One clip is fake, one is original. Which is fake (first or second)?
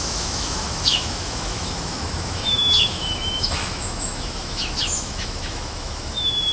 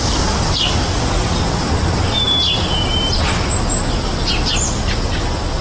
first